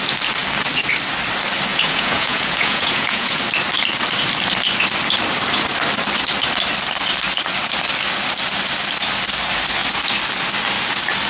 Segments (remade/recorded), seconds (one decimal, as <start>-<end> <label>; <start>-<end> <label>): 0.0-1.7 recorded; 1.7-3.4 remade; 3.4-11.3 recorded